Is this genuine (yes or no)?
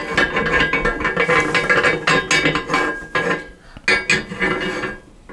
yes